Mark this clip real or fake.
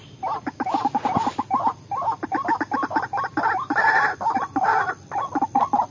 real